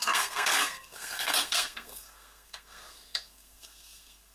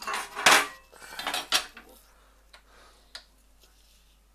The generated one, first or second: first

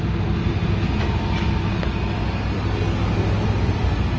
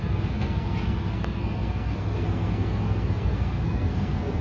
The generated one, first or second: second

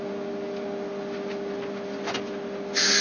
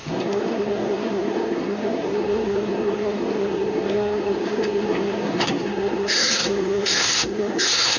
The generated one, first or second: second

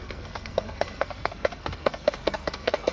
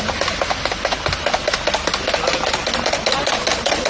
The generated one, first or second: first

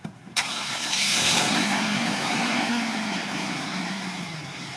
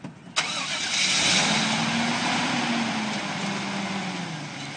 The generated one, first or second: first